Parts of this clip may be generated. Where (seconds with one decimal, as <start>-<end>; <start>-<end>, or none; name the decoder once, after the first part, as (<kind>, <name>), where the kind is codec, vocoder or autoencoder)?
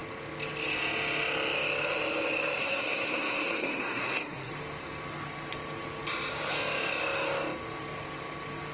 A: 2.6-4.5 (codec, SNAC)